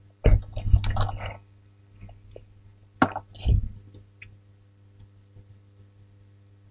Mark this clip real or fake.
real